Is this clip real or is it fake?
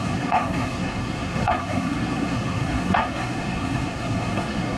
fake